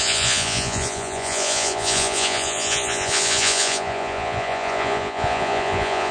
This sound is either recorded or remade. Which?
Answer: remade